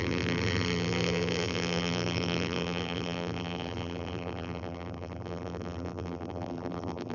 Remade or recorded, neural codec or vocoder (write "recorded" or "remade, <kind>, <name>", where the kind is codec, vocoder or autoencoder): remade, vocoder, BigVGAN v2